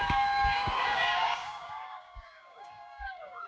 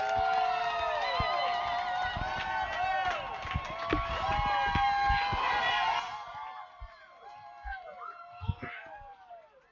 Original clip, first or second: second